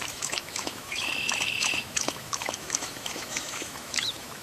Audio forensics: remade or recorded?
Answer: remade